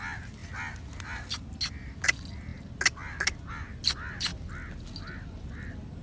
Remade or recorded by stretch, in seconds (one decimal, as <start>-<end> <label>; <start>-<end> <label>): 0.0-6.0 recorded